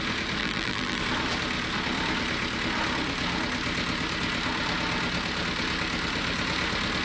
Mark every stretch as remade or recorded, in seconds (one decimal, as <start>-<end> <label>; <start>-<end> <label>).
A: 0.0-0.4 recorded; 0.4-1.0 remade; 1.0-7.0 recorded